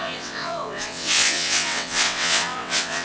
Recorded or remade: remade